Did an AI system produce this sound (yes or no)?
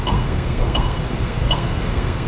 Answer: yes